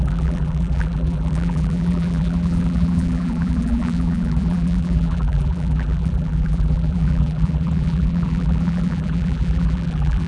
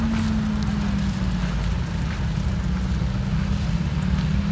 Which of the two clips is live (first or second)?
second